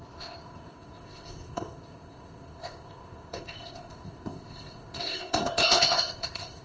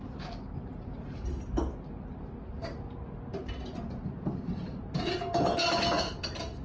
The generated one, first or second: first